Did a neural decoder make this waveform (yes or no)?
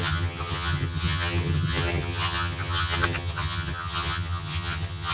yes